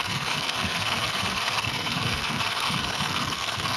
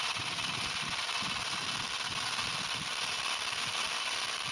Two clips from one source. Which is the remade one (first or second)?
first